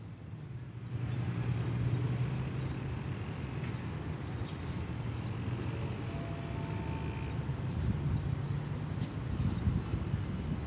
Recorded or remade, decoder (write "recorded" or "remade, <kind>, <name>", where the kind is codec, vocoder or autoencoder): recorded